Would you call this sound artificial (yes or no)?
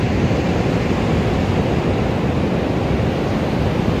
no